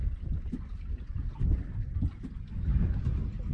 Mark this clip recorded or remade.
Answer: recorded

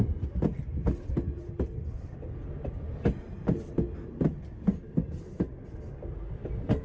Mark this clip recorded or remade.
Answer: recorded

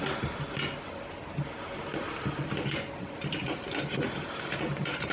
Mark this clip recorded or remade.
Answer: recorded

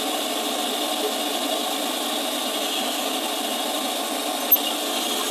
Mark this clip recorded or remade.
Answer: recorded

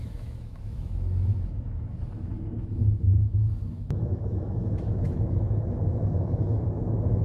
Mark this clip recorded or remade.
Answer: remade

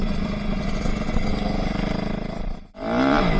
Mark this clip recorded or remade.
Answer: recorded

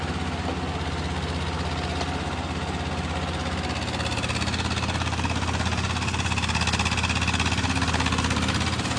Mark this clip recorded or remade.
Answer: recorded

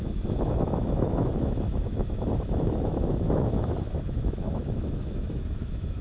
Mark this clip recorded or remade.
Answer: remade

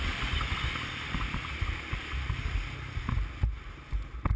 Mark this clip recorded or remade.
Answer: recorded